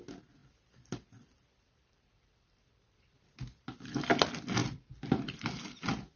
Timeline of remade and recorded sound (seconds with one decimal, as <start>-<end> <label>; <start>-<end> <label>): 0.0-0.4 recorded; 0.4-3.9 remade; 3.9-4.6 recorded; 4.6-6.2 remade